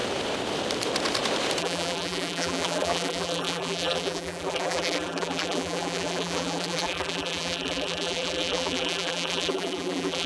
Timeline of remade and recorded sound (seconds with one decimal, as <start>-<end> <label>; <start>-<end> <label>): 0.0-1.6 recorded; 1.6-10.3 remade